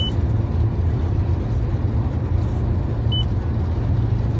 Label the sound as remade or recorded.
recorded